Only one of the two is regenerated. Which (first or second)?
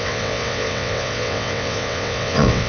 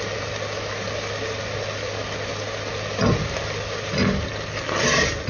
first